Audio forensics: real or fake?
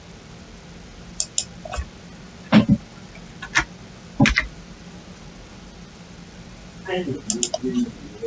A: real